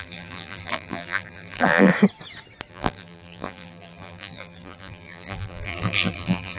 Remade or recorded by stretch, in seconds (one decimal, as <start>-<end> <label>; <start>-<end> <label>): 0.0-1.9 remade; 1.9-2.7 recorded; 2.7-6.6 remade